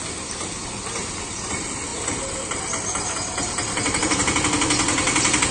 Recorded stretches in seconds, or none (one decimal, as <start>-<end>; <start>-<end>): 0.0-5.5